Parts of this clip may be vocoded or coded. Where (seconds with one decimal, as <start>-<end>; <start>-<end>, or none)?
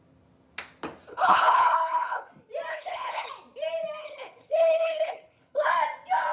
1.1-2.3; 2.7-3.3; 4.0-5.7